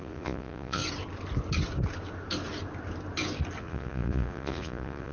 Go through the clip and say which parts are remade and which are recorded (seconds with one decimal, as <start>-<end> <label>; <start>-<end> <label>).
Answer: 0.0-0.8 remade; 0.8-3.6 recorded; 3.6-5.1 remade